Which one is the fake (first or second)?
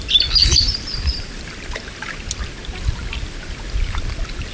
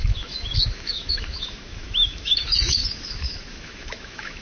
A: second